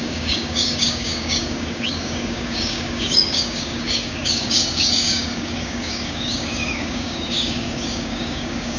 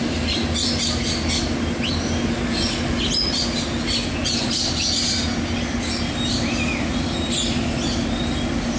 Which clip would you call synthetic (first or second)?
first